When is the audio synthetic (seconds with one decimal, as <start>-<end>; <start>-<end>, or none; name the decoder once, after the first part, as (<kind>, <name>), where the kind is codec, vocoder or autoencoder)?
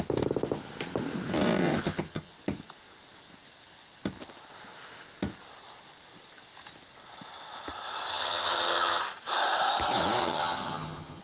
1.6-2.3 (vocoder, HiFi-GAN); 8.1-9.0; 10.2-11.2